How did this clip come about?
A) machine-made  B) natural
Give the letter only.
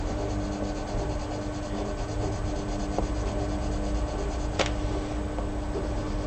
B